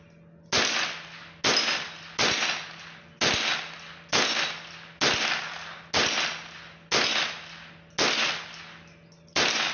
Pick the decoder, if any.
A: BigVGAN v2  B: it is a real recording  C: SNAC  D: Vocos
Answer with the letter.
B